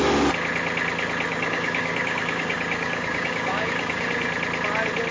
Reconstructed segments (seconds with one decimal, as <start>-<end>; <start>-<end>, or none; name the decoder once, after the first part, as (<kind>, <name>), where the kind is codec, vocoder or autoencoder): 1.3-4.1 (codec, DAC)